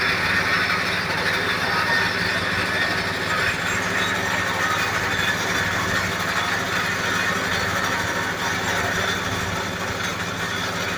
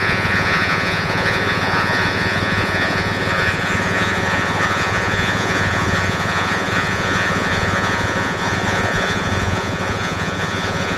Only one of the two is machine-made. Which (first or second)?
second